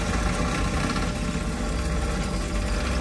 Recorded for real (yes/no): yes